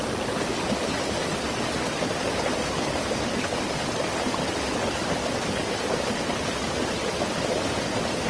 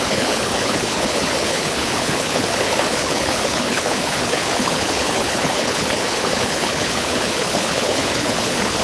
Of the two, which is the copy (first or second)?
second